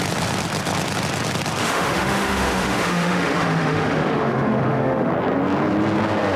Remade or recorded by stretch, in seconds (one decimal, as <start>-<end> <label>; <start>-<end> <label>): 0.0-1.6 recorded; 1.6-5.1 remade; 5.1-6.4 recorded